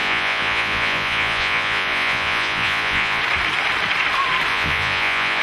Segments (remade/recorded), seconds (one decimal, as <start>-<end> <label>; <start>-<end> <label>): 0.0-3.2 remade; 3.2-4.5 recorded; 4.5-5.4 remade